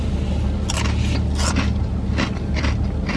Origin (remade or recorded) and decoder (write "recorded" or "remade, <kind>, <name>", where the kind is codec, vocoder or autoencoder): recorded